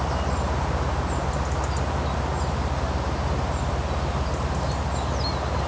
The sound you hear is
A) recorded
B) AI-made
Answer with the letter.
A